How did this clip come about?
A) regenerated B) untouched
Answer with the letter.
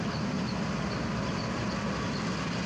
B